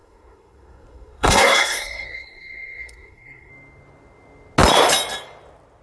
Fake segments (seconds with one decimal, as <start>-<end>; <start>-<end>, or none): 0.0-3.5